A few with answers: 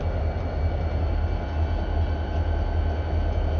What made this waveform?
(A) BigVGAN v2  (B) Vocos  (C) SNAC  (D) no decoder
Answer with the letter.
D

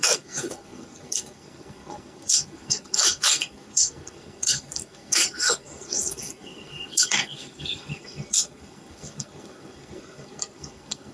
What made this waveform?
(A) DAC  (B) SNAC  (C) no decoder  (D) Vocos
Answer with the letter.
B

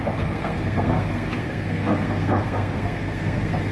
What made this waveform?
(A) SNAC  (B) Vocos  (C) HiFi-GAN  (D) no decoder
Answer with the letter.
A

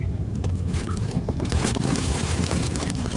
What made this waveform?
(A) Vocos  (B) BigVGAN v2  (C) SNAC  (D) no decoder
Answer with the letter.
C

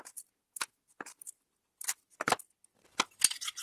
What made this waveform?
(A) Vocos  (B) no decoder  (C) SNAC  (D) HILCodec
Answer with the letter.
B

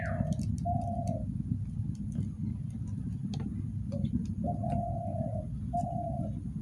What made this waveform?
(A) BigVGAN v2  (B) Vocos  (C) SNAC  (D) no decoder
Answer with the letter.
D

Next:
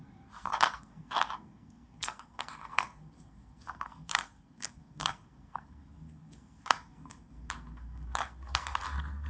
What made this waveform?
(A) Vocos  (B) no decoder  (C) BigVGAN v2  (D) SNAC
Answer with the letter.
D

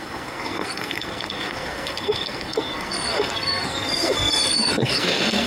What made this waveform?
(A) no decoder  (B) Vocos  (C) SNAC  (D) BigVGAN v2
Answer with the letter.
C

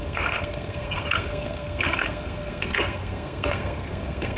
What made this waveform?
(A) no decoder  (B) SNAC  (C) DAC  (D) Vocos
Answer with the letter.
B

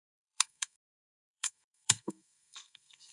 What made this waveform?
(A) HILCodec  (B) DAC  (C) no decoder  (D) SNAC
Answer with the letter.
D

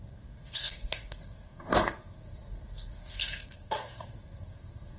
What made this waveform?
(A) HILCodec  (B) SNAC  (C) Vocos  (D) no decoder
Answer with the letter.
B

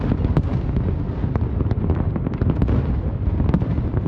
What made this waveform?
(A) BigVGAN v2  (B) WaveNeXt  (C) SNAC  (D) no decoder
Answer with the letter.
D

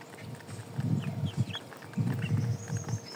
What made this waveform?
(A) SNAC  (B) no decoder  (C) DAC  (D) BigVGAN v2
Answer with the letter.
B